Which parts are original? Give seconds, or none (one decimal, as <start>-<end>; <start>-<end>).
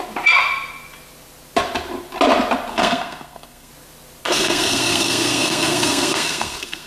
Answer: 0.0-2.7; 3.7-4.2